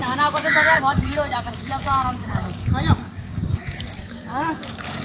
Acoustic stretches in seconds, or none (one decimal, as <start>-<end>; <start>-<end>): none